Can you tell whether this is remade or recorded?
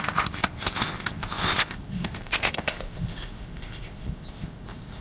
remade